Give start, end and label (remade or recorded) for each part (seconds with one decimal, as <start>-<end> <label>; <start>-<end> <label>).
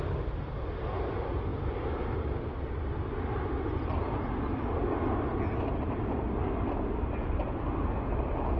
0.0-8.6 recorded